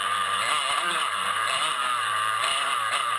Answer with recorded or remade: remade